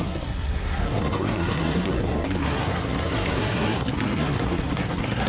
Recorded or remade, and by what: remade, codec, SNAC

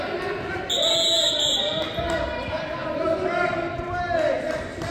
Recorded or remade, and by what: recorded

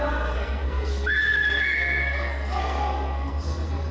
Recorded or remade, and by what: remade, codec, SNAC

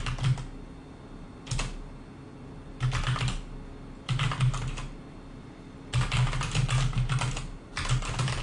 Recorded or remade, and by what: recorded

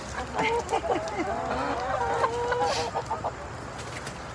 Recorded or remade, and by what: recorded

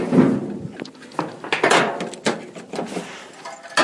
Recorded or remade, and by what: recorded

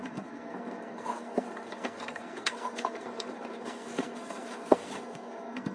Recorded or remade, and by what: remade, codec, SNAC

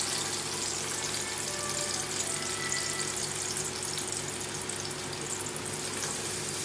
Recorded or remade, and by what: recorded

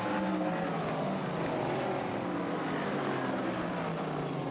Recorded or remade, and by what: recorded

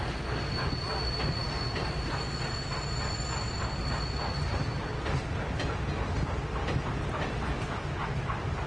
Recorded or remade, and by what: recorded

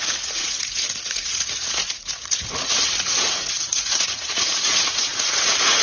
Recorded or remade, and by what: remade, vocoder, Vocos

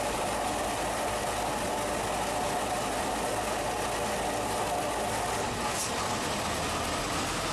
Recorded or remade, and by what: recorded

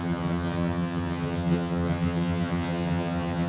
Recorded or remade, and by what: remade, vocoder, HiFi-GAN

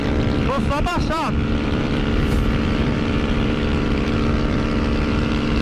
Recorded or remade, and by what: remade, vocoder, BigVGAN v2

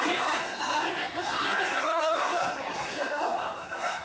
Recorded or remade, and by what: remade, codec, SNAC